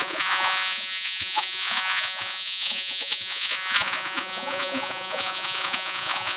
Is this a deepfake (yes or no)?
yes